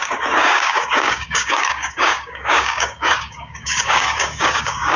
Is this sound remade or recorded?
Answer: remade